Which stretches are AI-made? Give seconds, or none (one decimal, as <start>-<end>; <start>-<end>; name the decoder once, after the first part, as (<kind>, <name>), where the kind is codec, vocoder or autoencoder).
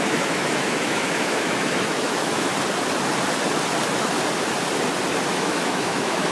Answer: 0.0-2.5 (autoencoder, DAC-VAE); 5.3-6.3